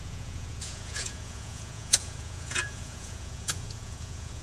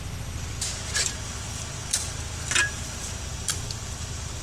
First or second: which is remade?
first